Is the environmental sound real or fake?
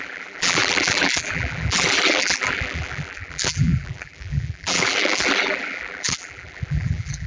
fake